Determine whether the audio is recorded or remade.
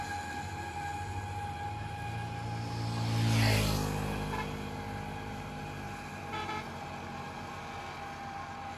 recorded